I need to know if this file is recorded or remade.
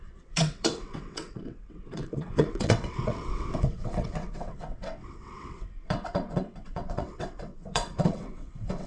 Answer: remade